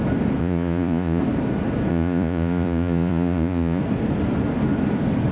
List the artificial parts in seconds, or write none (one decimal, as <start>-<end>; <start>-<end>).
0.4-1.2; 1.9-3.8